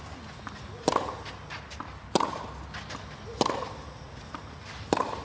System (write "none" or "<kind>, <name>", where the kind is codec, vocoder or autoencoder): none